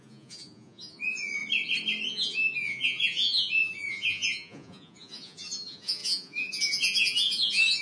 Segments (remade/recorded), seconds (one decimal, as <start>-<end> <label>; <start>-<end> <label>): 0.0-1.4 remade; 1.4-2.1 recorded; 2.1-7.8 remade